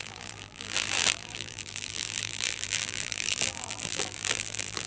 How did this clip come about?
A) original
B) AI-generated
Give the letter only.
B